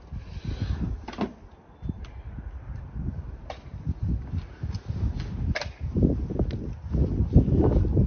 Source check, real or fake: real